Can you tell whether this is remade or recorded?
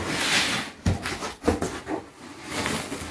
recorded